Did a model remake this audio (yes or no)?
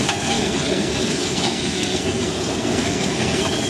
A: yes